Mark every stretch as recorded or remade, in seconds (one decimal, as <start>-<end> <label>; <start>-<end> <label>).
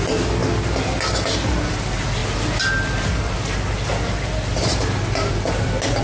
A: 0.0-6.0 recorded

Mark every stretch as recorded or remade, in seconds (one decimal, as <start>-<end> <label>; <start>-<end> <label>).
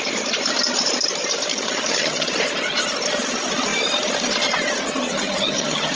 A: 0.0-1.5 recorded; 1.5-2.3 remade; 2.3-5.1 recorded; 5.1-6.0 remade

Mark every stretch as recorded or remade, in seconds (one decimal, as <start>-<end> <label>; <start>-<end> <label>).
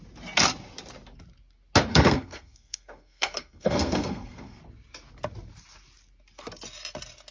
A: 0.0-1.9 recorded; 1.9-4.6 remade; 4.6-7.3 recorded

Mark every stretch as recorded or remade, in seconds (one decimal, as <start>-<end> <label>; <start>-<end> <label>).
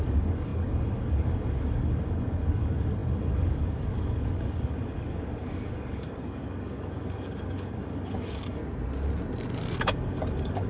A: 0.0-8.6 remade; 8.6-9.8 recorded; 9.8-10.7 remade